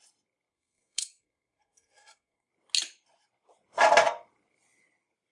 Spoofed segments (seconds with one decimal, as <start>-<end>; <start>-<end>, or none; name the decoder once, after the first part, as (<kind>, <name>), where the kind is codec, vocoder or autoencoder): 0.5-2.5 (codec, SNAC)